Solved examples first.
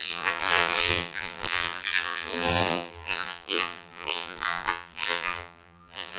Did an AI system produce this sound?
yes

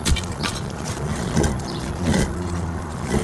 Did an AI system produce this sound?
yes